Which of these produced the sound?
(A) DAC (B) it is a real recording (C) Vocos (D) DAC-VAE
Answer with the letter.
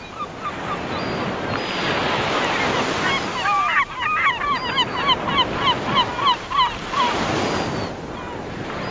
B